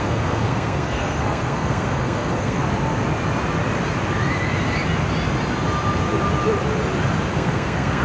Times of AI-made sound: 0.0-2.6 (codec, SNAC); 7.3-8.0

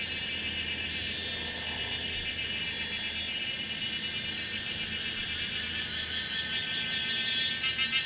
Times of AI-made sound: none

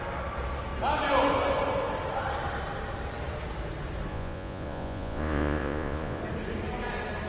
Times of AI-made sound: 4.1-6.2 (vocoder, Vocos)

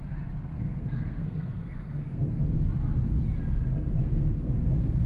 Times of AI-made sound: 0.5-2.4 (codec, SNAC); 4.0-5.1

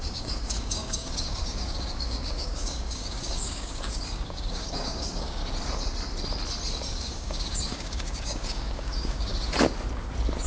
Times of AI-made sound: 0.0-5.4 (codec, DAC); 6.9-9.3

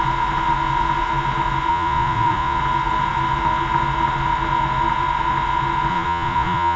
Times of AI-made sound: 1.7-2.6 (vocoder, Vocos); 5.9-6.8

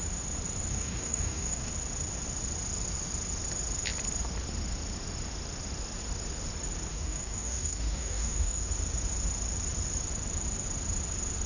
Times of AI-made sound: 0.7-1.7 (codec, DAC); 6.9-8.7

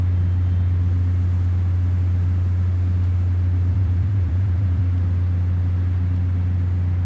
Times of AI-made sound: 3.7-4.8 (vocoder, Vocos)